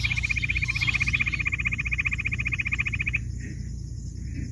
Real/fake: real